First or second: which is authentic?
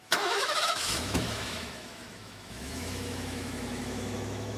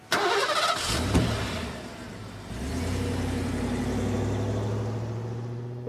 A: second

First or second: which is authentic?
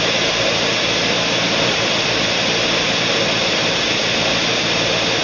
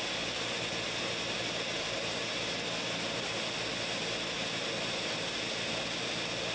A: second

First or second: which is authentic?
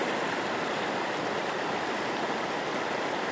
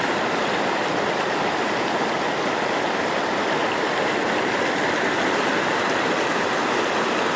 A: second